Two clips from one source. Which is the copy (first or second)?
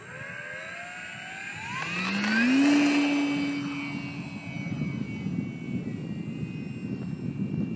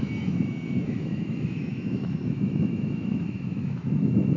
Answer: second